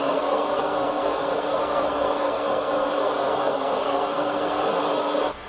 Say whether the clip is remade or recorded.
remade